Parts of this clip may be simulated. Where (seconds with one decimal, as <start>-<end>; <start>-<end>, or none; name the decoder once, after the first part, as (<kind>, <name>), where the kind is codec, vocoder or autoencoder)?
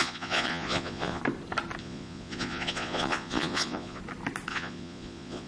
0.0-1.2 (vocoder, Vocos); 1.8-4.0; 4.5-5.5